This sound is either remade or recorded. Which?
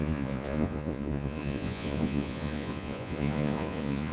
remade